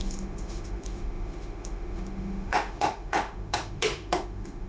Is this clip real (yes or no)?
no